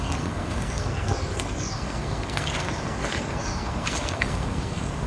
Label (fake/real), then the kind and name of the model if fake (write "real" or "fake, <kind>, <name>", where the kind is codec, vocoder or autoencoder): fake, codec, SNAC